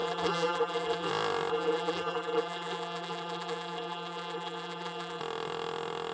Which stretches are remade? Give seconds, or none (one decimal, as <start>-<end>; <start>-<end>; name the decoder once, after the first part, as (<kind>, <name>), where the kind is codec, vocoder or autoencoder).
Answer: 0.0-1.1 (vocoder, BigVGAN v2); 1.5-5.2